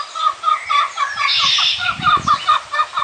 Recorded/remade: recorded